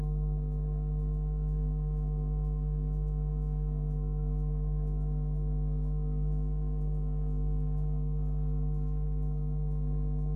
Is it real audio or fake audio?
fake